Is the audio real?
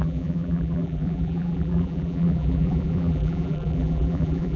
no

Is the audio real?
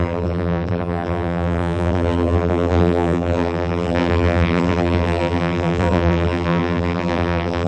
no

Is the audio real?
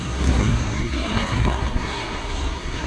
no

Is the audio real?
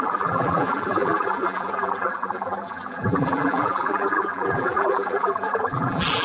no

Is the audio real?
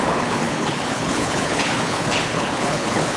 no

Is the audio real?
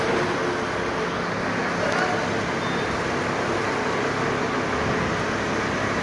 yes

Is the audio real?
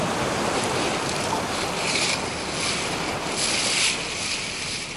yes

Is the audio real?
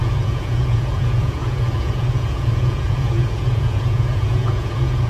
no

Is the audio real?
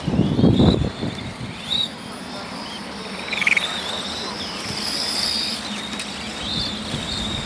no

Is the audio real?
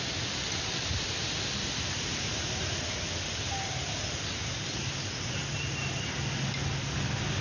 yes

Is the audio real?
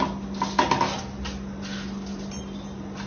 yes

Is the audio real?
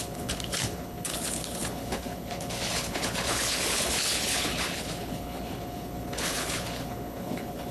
no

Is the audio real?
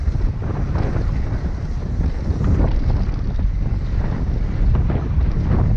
yes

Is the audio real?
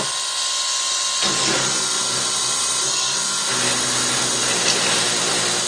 yes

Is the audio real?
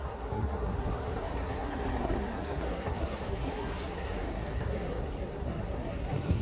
no